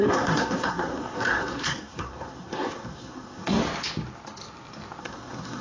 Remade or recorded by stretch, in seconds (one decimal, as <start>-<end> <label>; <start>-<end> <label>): 0.0-3.6 remade; 3.6-5.0 recorded; 5.0-5.6 remade